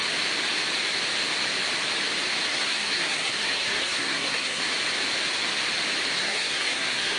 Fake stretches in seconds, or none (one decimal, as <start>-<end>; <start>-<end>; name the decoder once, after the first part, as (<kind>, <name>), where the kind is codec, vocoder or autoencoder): 2.5-4.6 (codec, SNAC); 6.2-7.2

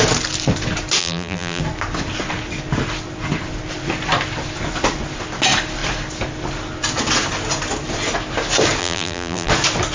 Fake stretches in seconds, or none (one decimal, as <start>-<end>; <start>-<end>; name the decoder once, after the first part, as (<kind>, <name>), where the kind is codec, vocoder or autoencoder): 1.0-1.6 (vocoder, BigVGAN v2); 8.8-9.5

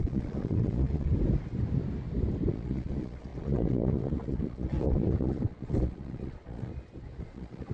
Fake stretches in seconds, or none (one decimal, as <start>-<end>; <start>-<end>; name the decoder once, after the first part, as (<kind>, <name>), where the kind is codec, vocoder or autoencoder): 0.0-1.1 (vocoder, Vocos); 2.5-6.7; 7.2-7.7

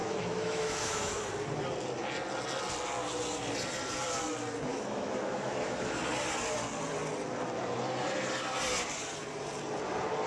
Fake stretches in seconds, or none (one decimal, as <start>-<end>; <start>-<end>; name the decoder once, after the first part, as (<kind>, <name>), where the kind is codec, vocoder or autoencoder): 0.0-1.3 (autoencoder, DAC-VAE); 4.7-6.0

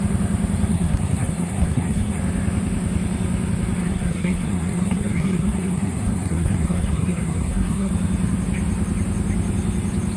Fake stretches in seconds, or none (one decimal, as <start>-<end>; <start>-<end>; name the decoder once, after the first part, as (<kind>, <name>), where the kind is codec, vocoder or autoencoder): 0.7-2.2 (codec, SNAC); 3.8-7.9

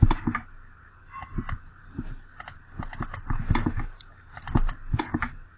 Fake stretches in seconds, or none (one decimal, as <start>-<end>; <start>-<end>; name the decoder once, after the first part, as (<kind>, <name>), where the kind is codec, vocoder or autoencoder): none